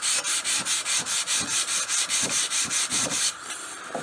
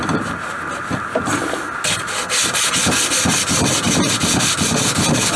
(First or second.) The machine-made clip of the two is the first